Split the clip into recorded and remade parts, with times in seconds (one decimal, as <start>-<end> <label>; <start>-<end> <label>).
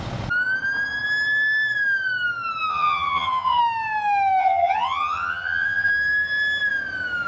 0.0-2.7 recorded; 2.7-3.6 remade; 3.6-4.4 recorded; 4.4-5.9 remade; 5.9-7.3 recorded